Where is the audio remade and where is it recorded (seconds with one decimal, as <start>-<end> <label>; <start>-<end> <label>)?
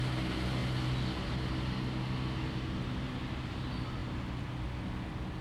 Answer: 0.0-5.4 recorded